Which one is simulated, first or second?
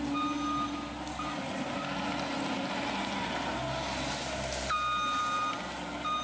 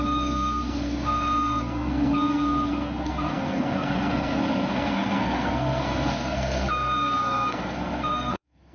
second